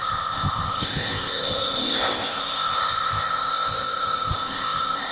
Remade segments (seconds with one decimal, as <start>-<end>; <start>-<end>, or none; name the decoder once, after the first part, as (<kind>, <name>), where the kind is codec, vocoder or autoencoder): 0.0-5.1 (codec, ZipCodec)